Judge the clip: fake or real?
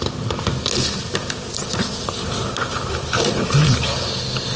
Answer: real